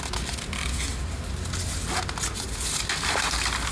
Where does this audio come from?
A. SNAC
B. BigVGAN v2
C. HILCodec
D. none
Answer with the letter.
D